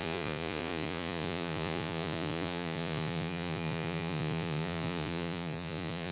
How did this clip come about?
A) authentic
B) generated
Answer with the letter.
B